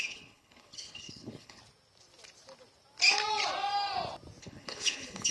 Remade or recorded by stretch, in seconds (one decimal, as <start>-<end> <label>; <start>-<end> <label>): 0.0-1.6 remade; 1.6-4.4 recorded; 4.4-5.3 remade